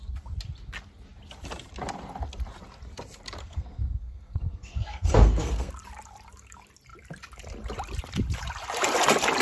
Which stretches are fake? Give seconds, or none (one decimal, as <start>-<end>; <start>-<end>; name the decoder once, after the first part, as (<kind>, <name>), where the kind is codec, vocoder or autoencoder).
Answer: 3.4-5.7 (codec, SNAC)